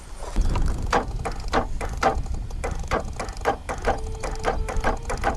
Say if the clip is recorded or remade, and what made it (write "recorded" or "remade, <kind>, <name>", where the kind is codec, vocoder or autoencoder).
recorded